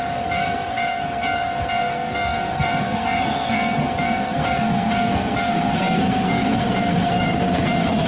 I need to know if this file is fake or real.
fake